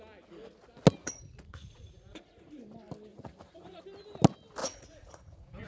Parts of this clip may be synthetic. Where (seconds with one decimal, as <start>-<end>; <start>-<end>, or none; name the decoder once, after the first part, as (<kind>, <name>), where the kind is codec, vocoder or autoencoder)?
1.0-2.6 (vocoder, Vocos); 3.1-3.8; 4.6-5.7